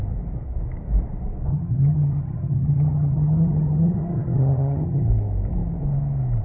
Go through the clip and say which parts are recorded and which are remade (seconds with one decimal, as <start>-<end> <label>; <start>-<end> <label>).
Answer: 0.0-1.5 recorded; 1.5-5.1 remade; 5.1-6.4 recorded